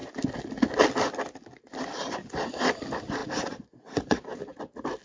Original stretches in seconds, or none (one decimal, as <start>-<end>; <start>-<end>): 0.0-3.2; 4.6-5.0